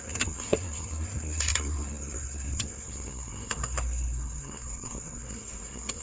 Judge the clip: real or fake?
fake